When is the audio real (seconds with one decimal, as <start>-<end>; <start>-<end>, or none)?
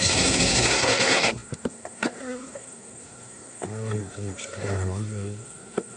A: none